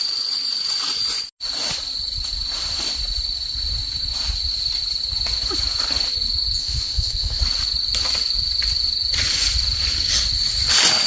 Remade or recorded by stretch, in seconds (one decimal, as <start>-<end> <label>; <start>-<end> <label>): 0.0-6.6 recorded; 6.6-7.4 remade; 7.4-11.1 recorded